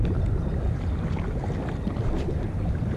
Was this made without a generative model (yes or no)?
yes